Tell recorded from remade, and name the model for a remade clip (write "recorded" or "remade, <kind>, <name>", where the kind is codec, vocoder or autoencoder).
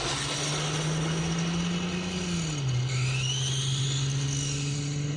recorded